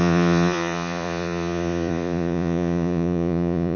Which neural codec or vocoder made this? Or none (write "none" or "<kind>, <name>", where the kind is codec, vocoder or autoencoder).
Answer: vocoder, Vocos